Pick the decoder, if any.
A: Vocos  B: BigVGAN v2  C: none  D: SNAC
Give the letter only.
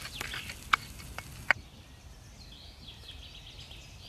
C